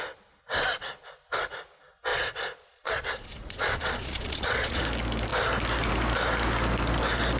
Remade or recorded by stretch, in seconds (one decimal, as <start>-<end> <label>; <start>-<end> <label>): 0.0-2.1 recorded; 2.1-4.8 remade; 4.8-7.4 recorded